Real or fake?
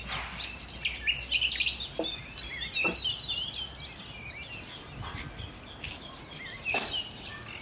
real